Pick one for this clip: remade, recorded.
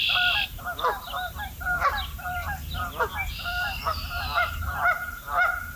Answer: remade